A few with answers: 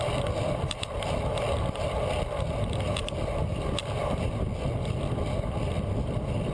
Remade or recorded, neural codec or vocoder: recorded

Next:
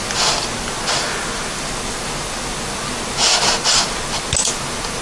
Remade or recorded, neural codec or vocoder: recorded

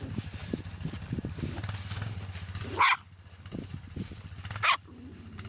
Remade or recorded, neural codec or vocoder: recorded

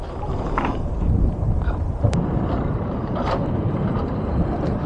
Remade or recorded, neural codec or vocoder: remade, vocoder, BigVGAN v2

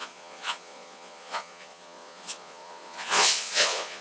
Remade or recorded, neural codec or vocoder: remade, vocoder, Vocos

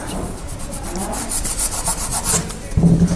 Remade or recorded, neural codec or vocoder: recorded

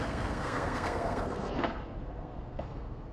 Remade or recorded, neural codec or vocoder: remade, codec, SNAC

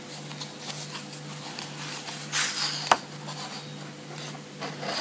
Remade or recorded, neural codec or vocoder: recorded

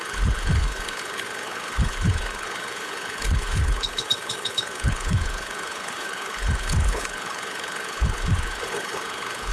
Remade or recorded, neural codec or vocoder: remade, codec, HILCodec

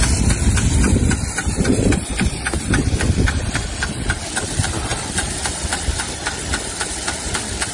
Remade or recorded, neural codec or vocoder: remade, vocoder, BigVGAN v2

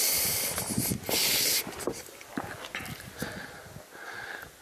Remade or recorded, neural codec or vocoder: recorded